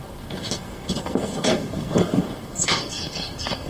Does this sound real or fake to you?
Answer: fake